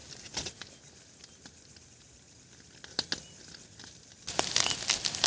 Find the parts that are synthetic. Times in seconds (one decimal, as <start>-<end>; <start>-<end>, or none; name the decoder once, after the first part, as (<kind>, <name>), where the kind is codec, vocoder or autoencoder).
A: none